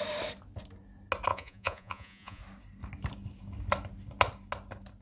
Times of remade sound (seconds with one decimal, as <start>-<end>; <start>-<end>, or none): 1.3-2.4